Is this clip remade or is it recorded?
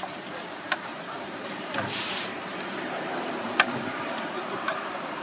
remade